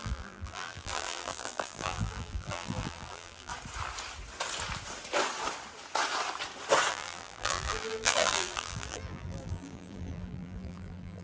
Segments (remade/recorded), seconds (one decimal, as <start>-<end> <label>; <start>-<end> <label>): 0.0-3.5 remade; 3.5-6.9 recorded; 6.9-11.2 remade